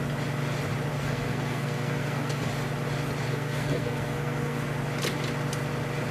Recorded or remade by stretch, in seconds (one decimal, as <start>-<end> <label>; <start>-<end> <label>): 0.0-0.9 recorded; 0.9-2.5 remade; 2.5-3.3 recorded; 3.3-4.6 remade; 4.6-6.1 recorded